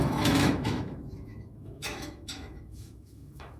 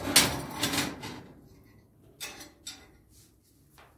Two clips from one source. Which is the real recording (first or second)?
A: second